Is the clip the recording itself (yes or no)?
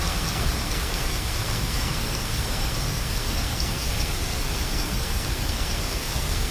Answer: no